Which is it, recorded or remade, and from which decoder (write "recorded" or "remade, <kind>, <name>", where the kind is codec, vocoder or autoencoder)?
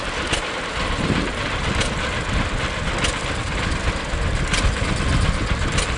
recorded